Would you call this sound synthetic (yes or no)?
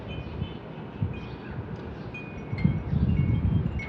no